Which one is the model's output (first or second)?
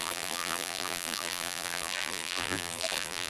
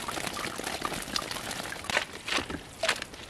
first